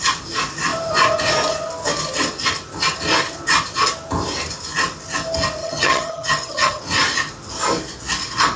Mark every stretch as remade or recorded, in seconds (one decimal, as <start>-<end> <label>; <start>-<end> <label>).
0.0-5.6 recorded; 5.6-6.8 remade; 6.8-8.6 recorded